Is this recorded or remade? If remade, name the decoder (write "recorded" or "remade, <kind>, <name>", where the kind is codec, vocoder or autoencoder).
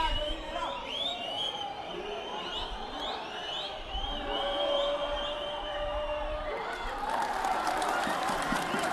remade, vocoder, BigVGAN v2